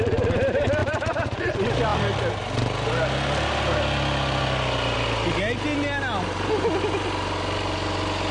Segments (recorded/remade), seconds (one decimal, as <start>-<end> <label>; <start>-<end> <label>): 0.0-0.8 recorded; 0.8-1.5 remade; 1.5-8.3 recorded